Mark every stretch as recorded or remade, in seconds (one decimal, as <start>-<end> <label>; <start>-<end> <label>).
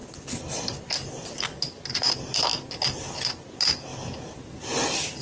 0.0-5.2 recorded